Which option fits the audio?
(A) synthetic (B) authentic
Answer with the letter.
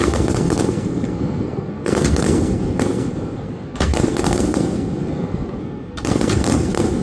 A